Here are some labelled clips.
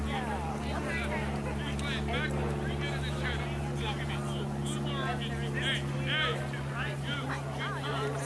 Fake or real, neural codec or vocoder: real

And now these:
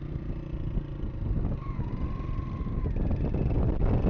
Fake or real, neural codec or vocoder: real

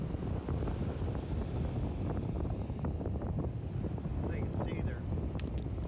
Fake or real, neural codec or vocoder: real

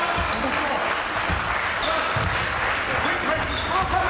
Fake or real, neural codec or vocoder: real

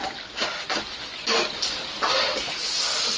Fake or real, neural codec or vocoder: real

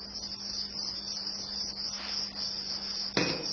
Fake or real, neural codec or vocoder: real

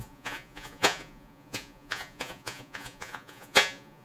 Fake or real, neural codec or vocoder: fake, vocoder, Vocos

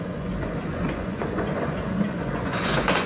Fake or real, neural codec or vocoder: fake, vocoder, Vocos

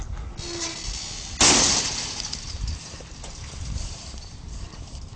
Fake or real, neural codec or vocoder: real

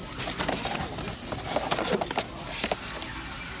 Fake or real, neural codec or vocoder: real